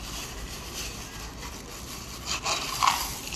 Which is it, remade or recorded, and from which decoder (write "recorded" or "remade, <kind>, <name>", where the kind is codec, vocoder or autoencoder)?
recorded